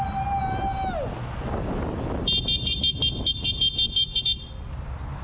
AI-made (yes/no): no